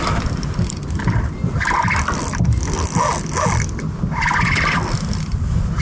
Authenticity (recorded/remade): recorded